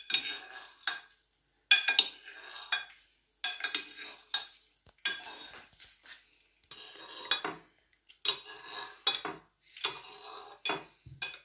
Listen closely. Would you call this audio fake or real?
real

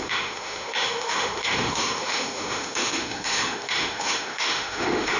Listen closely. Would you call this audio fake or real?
fake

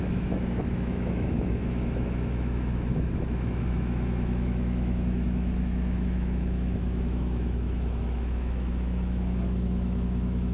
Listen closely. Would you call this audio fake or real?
fake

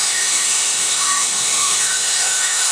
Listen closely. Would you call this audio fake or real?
fake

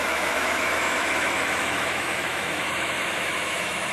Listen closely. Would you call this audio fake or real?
fake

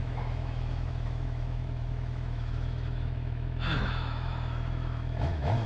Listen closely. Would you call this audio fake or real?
fake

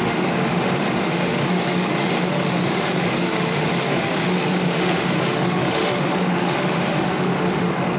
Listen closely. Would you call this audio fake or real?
fake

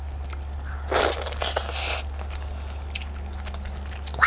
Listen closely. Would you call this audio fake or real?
real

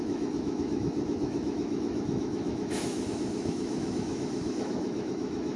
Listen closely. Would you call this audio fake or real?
fake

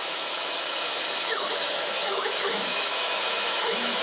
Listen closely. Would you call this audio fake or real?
fake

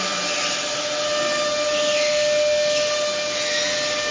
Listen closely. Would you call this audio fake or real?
real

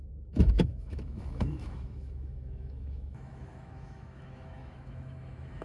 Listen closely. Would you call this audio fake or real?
fake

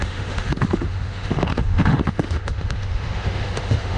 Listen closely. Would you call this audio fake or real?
fake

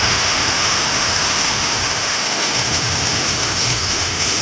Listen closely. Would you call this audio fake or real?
fake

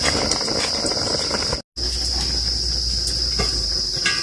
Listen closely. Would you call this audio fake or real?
real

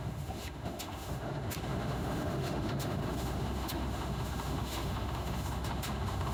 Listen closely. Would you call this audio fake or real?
fake